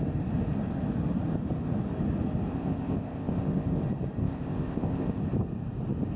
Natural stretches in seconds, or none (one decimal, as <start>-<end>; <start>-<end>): 0.0-2.5; 3.8-4.2; 5.2-6.2